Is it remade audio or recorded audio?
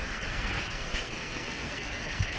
remade